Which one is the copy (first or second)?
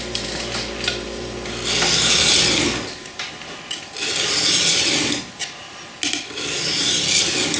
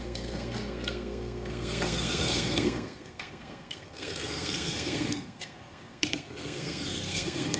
second